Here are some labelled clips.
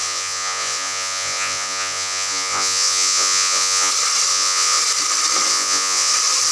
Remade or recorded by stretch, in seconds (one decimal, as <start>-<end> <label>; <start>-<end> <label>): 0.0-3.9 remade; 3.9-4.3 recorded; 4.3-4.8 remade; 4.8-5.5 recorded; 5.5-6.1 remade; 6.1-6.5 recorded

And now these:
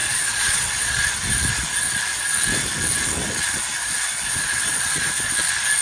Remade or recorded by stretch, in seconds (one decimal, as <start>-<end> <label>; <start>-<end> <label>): 0.0-1.1 remade; 1.1-3.8 recorded; 3.8-5.3 remade; 5.3-5.8 recorded

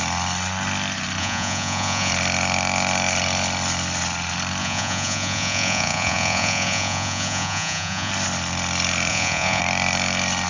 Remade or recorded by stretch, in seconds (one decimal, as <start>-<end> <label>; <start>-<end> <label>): 0.0-1.2 recorded; 1.2-2.1 remade; 2.1-4.6 recorded; 4.6-8.1 remade; 8.1-9.1 recorded; 9.1-9.6 remade; 9.6-10.5 recorded